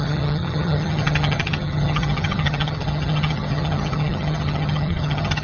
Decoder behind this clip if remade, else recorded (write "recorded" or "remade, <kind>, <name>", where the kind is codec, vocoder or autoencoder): remade, vocoder, HiFi-GAN